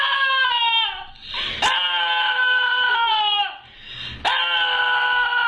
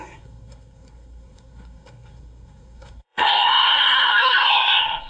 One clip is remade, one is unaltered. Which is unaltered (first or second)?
first